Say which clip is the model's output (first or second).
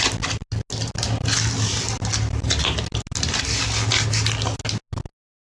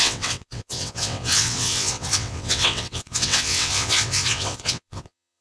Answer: second